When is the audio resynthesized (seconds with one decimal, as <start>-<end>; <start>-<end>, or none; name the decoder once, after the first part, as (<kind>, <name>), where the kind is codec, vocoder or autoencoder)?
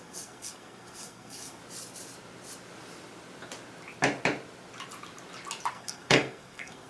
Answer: 0.0-1.6 (codec, SNAC); 5.7-6.9